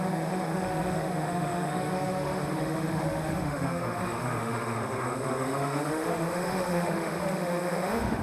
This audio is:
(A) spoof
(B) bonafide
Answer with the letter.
A